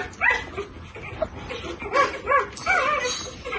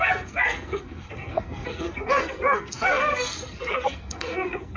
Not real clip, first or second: second